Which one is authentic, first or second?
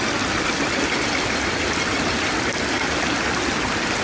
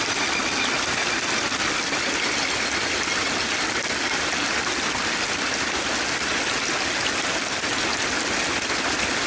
second